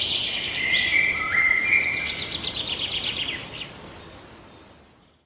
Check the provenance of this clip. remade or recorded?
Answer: recorded